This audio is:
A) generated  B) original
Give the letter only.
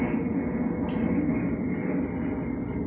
B